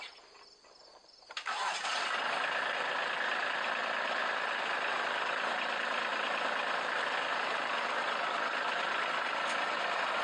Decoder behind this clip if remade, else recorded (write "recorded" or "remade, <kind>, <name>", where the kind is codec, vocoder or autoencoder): remade, vocoder, BigVGAN v2